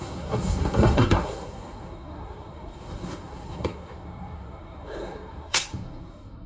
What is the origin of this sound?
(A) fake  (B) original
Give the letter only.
A